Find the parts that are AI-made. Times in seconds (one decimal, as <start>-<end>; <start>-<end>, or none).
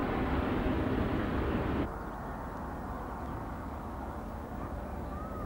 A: 3.3-5.5